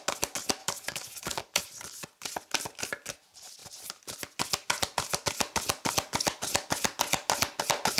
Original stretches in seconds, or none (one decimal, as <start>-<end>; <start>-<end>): 0.0-0.6; 1.6-8.0

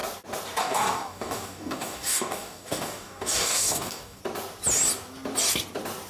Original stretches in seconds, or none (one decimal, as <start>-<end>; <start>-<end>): 0.0-0.6; 4.2-6.1